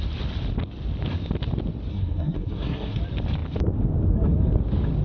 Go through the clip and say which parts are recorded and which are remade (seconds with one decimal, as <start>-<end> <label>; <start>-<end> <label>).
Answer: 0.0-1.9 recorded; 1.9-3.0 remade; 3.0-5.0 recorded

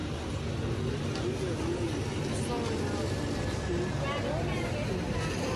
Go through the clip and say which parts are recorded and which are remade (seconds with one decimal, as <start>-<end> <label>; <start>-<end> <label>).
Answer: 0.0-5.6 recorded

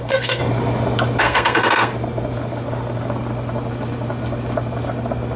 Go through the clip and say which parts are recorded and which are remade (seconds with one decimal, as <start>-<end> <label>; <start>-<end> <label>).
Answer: 0.0-0.4 remade; 0.4-1.2 recorded; 1.2-1.9 remade; 1.9-5.4 recorded

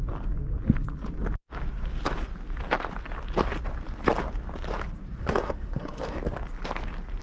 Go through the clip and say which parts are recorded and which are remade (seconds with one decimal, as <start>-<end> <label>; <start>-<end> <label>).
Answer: 0.0-5.2 recorded; 5.2-6.2 remade; 6.2-7.2 recorded

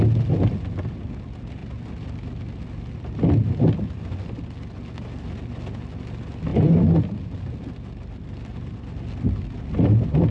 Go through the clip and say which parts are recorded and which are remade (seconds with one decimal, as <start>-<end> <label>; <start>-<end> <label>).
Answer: 0.0-10.3 recorded

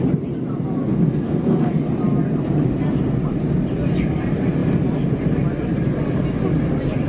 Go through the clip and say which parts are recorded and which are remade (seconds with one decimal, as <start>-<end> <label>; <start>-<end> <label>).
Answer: 0.0-0.8 recorded; 0.8-1.8 remade; 1.8-7.1 recorded

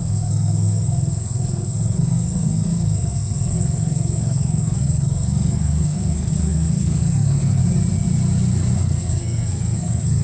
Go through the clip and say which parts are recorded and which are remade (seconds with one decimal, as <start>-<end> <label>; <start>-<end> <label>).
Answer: 0.0-7.6 remade; 7.6-8.8 recorded; 8.8-10.2 remade

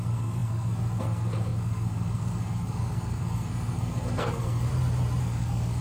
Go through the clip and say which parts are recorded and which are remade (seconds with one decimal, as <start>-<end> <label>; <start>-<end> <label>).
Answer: 0.0-4.7 remade; 4.7-5.2 recorded; 5.2-5.8 remade